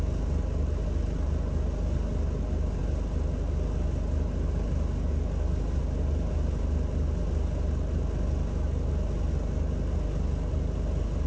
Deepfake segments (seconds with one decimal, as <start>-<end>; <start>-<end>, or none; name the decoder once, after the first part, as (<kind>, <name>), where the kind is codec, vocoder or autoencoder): none